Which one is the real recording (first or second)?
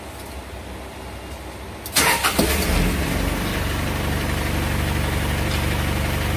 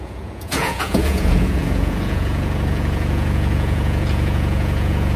first